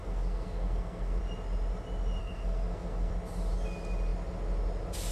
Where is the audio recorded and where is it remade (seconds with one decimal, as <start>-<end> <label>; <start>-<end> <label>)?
0.0-1.2 remade; 1.2-2.2 recorded; 2.2-3.1 remade; 3.1-5.1 recorded